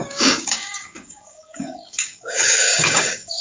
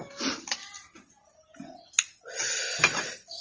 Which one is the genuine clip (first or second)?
second